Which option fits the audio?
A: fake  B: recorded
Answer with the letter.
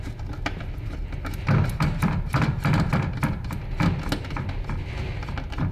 B